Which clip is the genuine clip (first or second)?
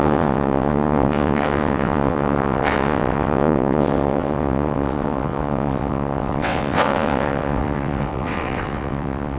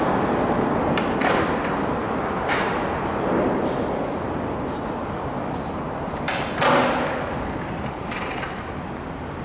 second